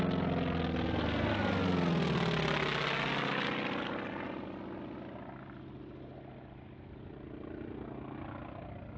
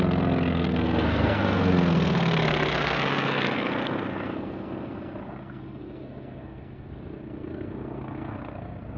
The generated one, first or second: second